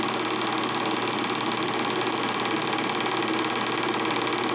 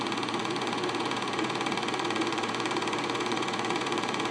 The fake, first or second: second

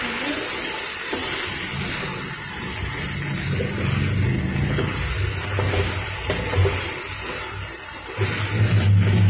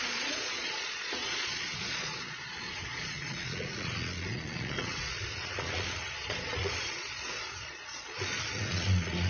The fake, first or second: second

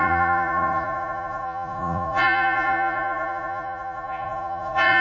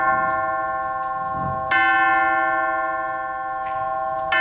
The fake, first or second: first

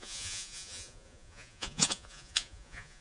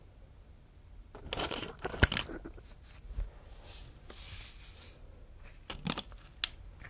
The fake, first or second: first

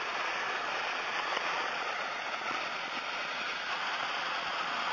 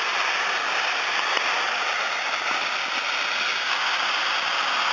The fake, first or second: first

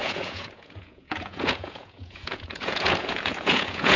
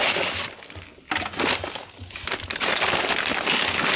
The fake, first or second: first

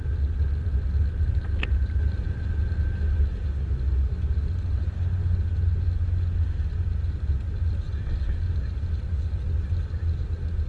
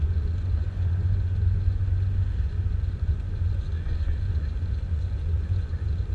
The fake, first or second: second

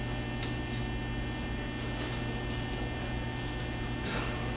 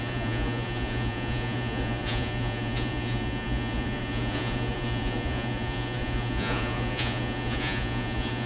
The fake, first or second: second